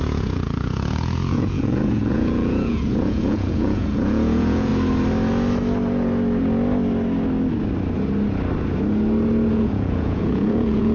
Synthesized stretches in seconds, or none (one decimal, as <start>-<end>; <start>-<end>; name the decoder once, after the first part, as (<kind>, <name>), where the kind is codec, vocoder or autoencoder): 0.0-4.7 (vocoder, Vocos); 9.5-10.9